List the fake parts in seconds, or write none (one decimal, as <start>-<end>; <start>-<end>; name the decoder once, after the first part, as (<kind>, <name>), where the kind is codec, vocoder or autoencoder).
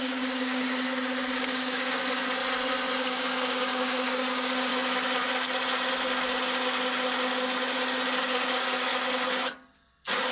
0.0-2.4 (codec, DAC); 3.0-4.7; 8.2-8.9